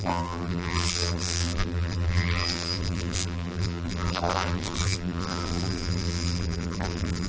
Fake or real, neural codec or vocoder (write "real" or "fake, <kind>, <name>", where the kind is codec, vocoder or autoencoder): fake, vocoder, BigVGAN v2